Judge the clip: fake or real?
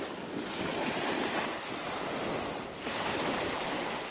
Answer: real